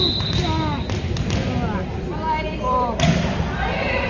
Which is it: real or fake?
real